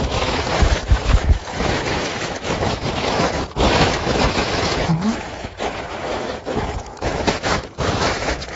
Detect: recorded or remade remade